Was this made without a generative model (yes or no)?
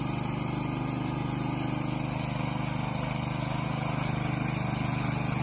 yes